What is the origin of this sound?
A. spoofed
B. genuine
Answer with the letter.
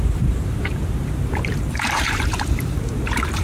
A